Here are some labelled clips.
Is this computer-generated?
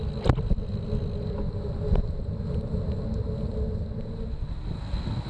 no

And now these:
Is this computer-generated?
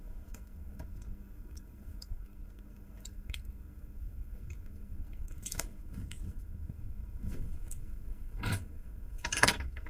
yes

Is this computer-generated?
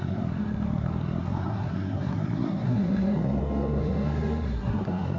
yes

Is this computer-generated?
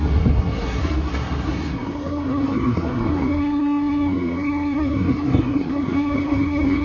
yes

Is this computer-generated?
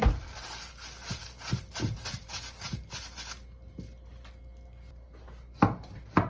no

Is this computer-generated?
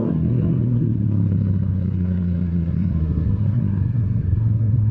yes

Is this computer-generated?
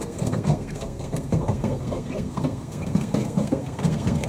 yes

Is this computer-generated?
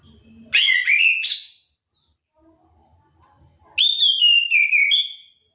no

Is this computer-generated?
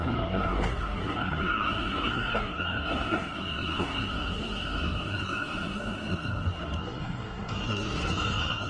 yes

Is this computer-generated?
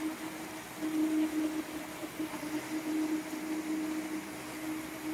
no